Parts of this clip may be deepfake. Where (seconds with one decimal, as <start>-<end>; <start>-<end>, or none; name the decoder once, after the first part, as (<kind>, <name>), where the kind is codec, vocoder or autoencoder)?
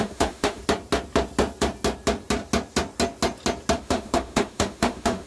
0.0-0.6 (autoencoder, DAC-VAE); 3.8-5.3